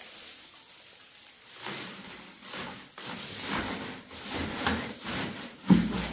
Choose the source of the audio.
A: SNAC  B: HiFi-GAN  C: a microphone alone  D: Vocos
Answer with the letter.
C